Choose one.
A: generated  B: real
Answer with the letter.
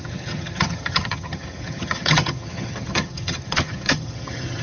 A